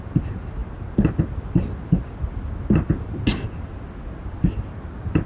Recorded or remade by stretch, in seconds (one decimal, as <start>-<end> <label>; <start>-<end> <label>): 0.0-5.3 recorded